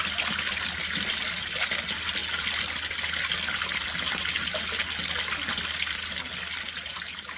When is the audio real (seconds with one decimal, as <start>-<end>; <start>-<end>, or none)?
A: 0.0-7.4